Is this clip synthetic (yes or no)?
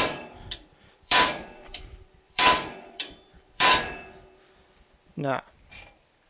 yes